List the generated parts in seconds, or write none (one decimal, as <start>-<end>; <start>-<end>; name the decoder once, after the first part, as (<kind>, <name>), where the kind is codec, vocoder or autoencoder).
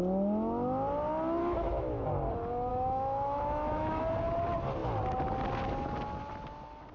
1.4-2.1 (autoencoder, DAC-VAE); 2.7-4.0